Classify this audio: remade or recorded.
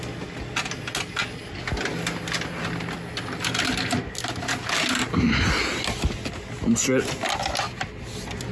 recorded